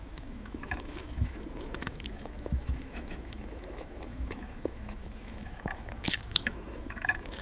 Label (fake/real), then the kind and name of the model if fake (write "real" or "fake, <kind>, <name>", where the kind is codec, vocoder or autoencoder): fake, autoencoder, DAC-VAE